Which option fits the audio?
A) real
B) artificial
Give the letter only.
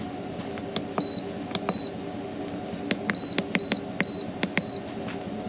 A